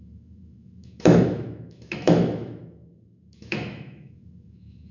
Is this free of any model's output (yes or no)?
no